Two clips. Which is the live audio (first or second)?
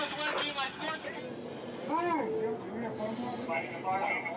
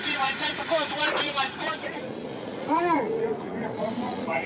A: first